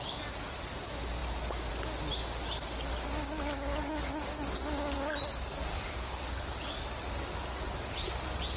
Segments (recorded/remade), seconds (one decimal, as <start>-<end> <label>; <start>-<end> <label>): 0.0-5.7 recorded; 5.7-6.8 remade; 6.8-8.6 recorded

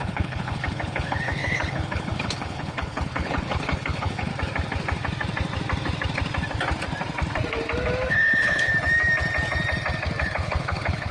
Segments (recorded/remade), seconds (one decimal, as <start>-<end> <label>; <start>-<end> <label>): 0.0-4.3 remade; 4.3-8.1 recorded; 8.1-8.7 remade; 8.7-10.2 recorded; 10.2-11.1 remade

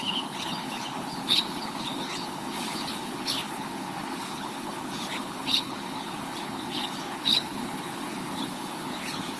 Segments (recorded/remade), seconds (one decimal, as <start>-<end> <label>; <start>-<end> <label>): 0.0-9.4 remade

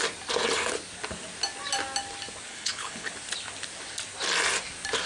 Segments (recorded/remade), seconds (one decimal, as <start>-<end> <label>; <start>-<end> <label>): 0.0-2.5 recorded; 2.5-3.1 remade; 3.1-5.1 recorded

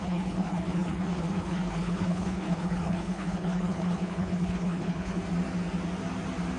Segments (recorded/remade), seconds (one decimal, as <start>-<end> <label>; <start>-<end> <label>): 0.0-5.2 remade; 5.2-6.6 recorded

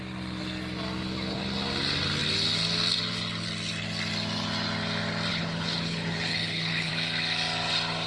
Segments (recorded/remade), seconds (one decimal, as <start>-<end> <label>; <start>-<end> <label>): 0.0-5.3 recorded; 5.3-6.9 remade; 6.9-8.1 recorded

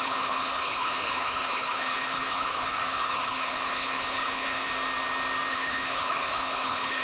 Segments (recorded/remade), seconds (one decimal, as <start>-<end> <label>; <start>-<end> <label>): 0.0-4.7 remade; 4.7-5.5 recorded; 5.5-7.0 remade